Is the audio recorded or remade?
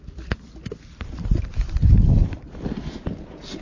recorded